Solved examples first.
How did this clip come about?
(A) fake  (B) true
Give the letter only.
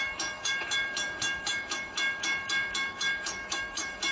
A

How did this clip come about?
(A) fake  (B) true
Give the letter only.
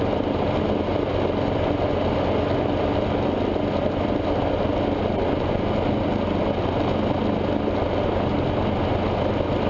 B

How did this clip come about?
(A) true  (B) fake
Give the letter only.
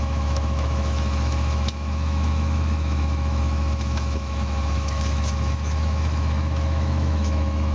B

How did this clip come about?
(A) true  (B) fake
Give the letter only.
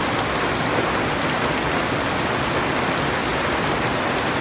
A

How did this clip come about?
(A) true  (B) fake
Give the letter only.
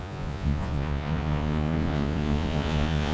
B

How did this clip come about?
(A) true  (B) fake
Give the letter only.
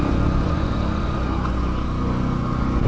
B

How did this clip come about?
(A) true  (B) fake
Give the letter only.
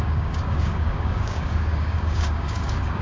B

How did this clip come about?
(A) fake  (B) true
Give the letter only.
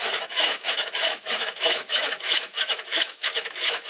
A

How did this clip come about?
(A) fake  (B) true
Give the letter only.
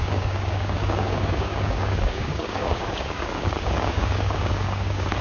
A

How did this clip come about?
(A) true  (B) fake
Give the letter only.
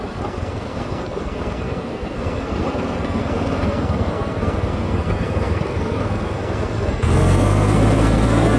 B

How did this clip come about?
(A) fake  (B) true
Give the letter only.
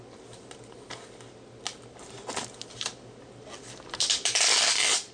B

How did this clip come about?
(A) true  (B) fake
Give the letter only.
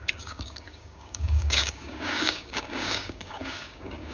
B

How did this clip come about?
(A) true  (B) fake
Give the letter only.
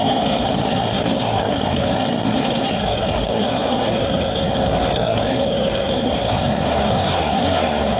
B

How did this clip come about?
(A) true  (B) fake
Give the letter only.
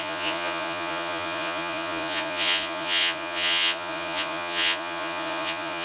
B